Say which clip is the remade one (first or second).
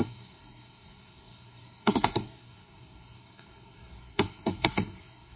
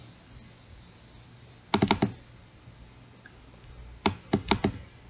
first